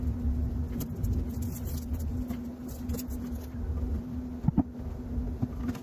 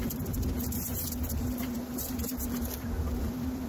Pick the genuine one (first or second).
first